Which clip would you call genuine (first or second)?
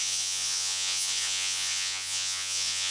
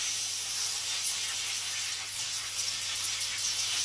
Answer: second